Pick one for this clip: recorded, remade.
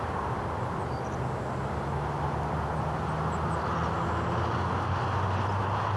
recorded